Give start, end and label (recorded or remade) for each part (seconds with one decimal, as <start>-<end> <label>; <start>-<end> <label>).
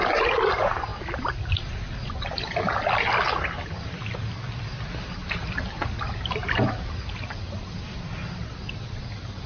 0.0-9.5 recorded